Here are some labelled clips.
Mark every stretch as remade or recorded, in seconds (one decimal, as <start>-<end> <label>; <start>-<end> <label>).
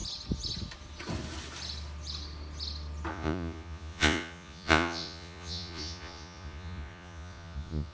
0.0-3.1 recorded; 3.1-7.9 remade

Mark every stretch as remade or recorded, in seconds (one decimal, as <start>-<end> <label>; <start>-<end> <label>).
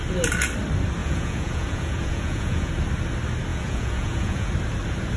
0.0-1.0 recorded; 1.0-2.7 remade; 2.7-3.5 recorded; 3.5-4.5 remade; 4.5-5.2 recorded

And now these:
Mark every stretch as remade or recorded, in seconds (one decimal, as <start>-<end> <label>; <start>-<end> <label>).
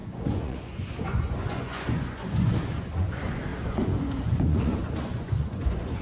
0.0-6.0 remade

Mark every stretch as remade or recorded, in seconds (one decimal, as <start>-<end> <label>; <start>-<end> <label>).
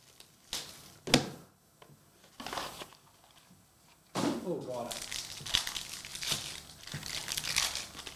0.0-8.2 recorded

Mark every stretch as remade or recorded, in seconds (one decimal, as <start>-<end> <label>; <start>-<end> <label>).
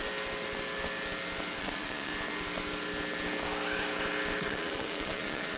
0.0-1.6 recorded; 1.6-2.1 remade; 2.1-4.4 recorded; 4.4-5.6 remade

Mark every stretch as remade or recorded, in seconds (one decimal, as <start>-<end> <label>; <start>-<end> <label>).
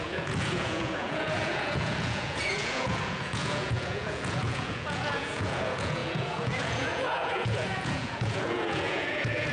0.0-9.5 remade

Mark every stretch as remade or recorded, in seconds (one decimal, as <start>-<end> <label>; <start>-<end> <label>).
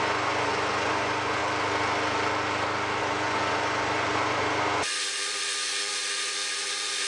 0.0-1.4 remade; 1.4-3.0 recorded; 3.0-7.1 remade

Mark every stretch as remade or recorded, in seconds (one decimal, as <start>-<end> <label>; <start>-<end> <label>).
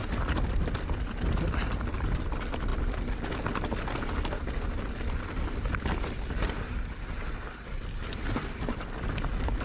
0.0-9.6 recorded